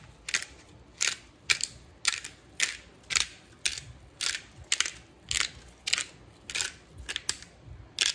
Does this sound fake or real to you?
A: real